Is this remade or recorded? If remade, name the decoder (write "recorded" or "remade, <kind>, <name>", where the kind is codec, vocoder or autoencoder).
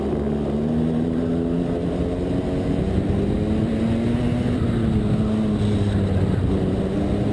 recorded